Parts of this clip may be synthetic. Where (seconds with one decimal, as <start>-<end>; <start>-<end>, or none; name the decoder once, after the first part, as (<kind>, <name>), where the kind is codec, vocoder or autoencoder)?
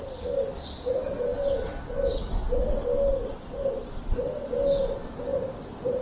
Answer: 3.1-4.5 (vocoder, BigVGAN v2); 5.3-6.0